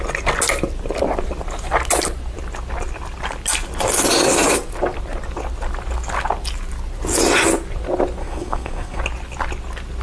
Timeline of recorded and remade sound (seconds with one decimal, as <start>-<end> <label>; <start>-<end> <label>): 0.0-8.2 recorded; 8.2-9.0 remade; 9.0-10.0 recorded